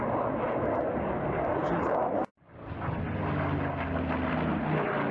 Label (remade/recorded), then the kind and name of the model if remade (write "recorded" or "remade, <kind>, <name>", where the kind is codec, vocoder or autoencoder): recorded